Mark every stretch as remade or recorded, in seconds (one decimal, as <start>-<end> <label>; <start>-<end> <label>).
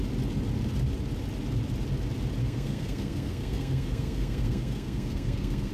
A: 0.0-2.4 recorded; 2.4-5.7 remade